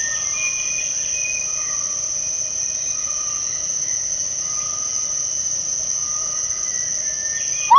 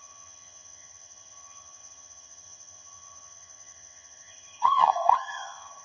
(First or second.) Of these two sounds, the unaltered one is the first